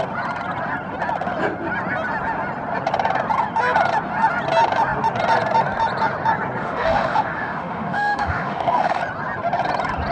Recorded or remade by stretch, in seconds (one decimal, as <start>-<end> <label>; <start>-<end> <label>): 0.0-6.6 recorded; 6.6-9.0 remade; 9.0-10.1 recorded